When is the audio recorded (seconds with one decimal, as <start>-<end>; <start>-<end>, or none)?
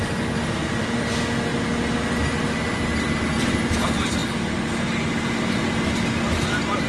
0.0-6.9